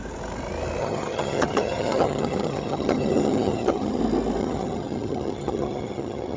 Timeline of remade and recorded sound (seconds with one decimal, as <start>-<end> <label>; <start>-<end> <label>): 0.0-0.8 recorded; 0.8-4.0 remade; 4.0-4.4 recorded; 4.4-6.4 remade